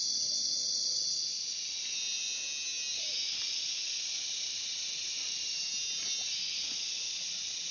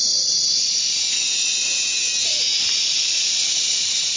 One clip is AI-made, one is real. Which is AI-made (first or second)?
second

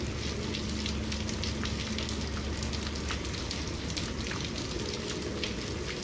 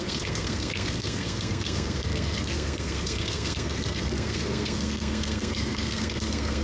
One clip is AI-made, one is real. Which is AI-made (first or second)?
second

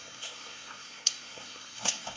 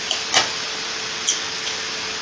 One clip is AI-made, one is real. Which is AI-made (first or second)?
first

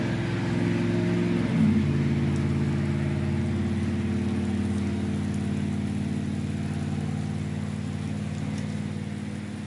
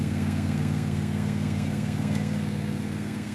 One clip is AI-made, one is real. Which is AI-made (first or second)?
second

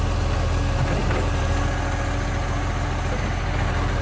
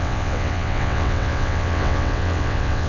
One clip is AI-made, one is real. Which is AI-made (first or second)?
second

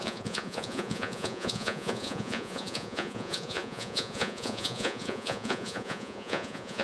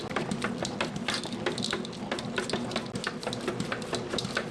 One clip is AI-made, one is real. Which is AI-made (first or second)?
first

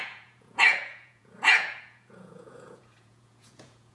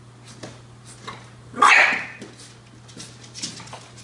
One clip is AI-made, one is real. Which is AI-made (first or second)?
first